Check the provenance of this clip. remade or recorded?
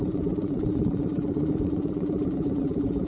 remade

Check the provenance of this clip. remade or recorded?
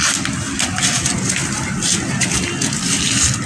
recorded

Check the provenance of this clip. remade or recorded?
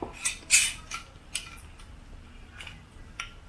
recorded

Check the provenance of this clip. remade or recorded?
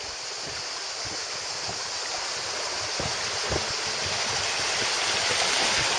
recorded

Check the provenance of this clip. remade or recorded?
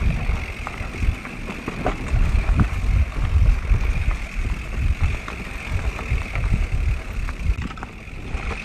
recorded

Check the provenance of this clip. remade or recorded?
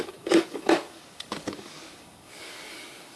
remade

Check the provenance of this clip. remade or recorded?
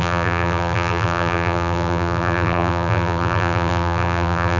remade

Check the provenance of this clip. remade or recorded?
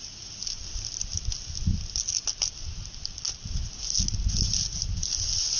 recorded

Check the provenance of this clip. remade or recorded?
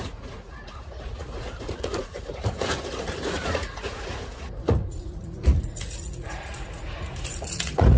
remade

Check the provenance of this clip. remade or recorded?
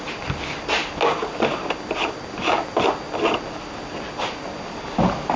recorded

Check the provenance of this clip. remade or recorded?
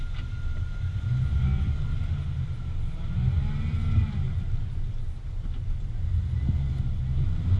recorded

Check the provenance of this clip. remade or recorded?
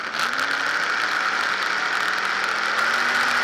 recorded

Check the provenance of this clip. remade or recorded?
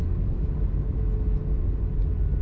recorded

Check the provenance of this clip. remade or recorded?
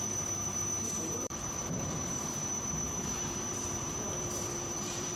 remade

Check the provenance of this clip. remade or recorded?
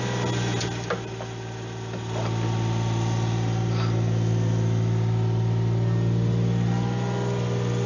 recorded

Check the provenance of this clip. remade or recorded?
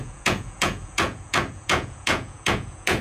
remade